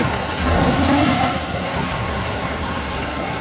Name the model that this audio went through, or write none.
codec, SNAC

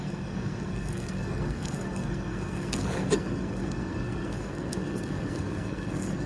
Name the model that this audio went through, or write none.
codec, SNAC